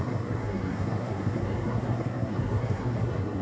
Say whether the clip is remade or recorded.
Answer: remade